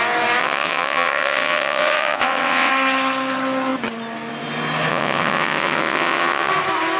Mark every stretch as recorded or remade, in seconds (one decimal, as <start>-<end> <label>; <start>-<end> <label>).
0.0-0.4 recorded; 0.4-2.7 remade; 2.7-4.9 recorded; 4.9-6.5 remade; 6.5-7.0 recorded